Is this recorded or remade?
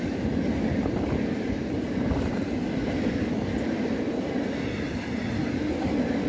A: recorded